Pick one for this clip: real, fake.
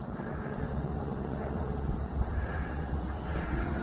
fake